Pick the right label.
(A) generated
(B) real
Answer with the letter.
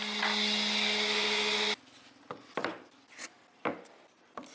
B